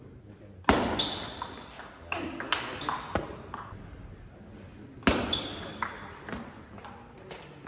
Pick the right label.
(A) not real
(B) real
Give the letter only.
B